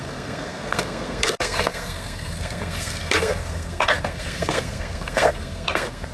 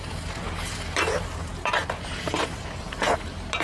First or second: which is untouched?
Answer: second